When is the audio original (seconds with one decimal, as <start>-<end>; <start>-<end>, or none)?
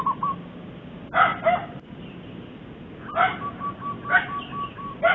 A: 0.0-5.1